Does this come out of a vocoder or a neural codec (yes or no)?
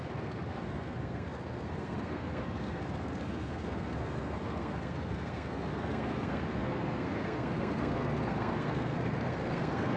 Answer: yes